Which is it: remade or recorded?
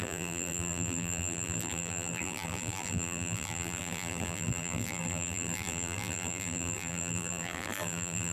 remade